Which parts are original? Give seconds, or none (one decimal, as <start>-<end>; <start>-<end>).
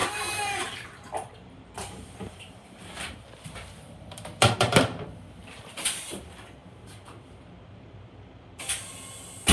4.8-5.4; 6.0-6.6; 8.9-9.5